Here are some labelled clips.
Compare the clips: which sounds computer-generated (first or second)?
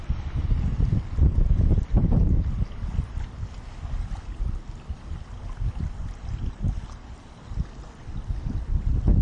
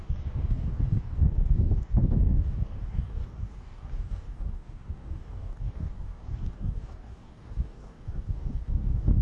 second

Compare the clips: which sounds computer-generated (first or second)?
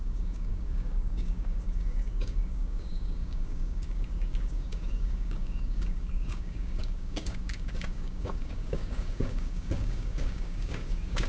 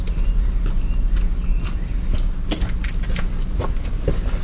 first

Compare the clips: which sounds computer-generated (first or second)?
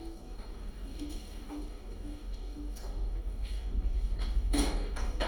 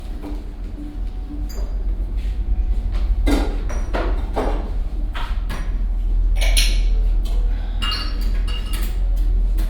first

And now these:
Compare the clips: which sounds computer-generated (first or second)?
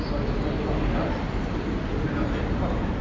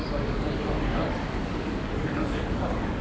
second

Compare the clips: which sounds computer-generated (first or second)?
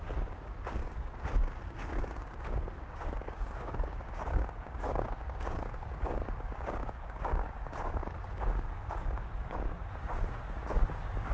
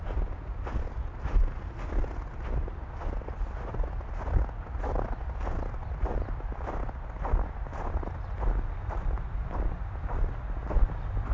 first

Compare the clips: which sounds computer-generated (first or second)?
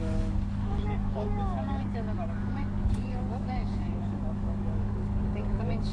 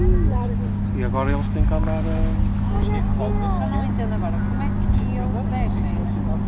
first